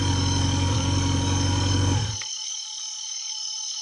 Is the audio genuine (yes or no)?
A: no